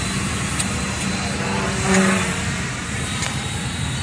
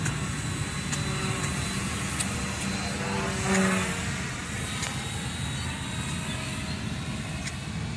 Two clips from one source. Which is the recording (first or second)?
second